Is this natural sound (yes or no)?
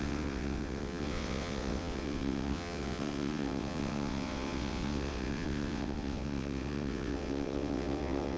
no